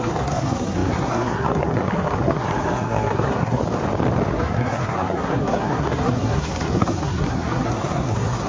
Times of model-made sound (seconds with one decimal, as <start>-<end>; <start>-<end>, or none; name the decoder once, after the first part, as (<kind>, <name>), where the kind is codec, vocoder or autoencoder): 0.0-3.6 (codec, SNAC); 4.3-8.5